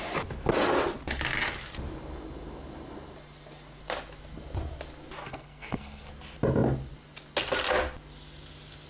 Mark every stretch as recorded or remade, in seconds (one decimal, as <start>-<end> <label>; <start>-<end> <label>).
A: 0.0-5.2 recorded; 5.2-6.1 remade; 6.1-8.9 recorded